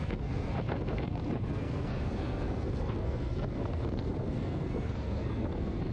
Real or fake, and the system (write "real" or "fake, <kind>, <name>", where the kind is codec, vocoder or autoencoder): fake, codec, SNAC